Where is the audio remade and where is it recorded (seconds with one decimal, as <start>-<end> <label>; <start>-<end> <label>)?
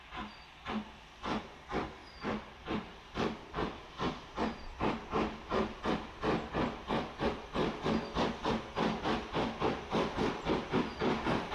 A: 0.0-2.0 recorded; 2.0-4.9 remade; 4.9-11.5 recorded